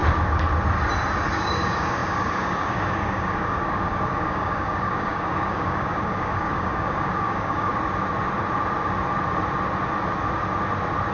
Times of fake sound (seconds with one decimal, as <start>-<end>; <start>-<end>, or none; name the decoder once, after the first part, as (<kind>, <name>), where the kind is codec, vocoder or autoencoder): 1.3-7.7 (codec, DAC)